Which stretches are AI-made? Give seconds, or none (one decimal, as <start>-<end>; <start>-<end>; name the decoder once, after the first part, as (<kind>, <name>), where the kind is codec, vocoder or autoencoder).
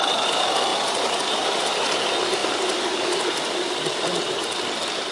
none